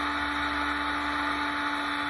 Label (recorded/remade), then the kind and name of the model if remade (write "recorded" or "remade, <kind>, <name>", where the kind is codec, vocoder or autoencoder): recorded